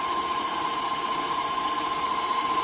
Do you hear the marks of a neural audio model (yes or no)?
yes